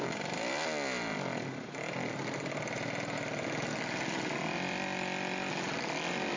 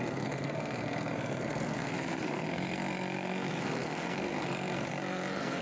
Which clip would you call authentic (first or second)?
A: first